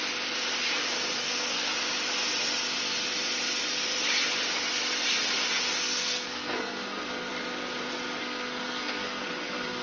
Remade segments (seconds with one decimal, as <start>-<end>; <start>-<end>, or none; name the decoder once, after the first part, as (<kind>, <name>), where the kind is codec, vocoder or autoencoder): 1.2-1.7 (codec, SNAC); 5.8-7.3; 8.2-9.8